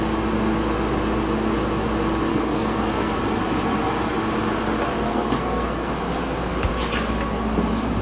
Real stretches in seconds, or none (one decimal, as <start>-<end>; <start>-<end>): 0.0-2.3; 3.1-5.1; 5.9-8.0